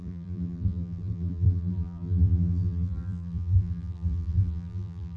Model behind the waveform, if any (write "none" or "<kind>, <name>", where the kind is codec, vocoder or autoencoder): vocoder, BigVGAN v2